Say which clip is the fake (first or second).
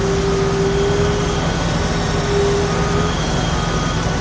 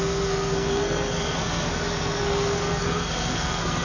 second